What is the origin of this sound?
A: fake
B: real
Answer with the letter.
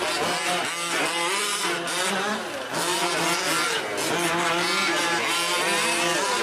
B